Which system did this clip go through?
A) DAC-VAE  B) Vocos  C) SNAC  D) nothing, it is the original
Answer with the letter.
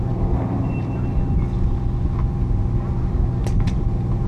D